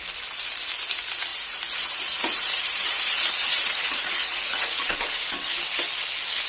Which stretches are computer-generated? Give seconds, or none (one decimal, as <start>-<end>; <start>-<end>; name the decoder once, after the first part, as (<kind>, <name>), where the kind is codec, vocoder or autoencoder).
1.3-5.2 (vocoder, Vocos)